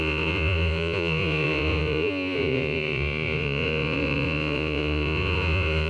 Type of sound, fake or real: fake